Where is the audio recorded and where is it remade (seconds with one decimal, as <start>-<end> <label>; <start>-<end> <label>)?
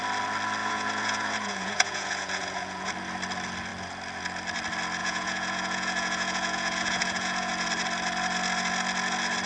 0.0-0.6 recorded; 0.6-2.9 remade; 2.9-5.0 recorded; 5.0-7.5 remade; 7.5-9.5 recorded